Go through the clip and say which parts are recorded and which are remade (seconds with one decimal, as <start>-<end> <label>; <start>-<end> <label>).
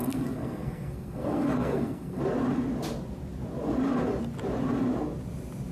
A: 0.0-2.2 remade; 2.2-5.7 recorded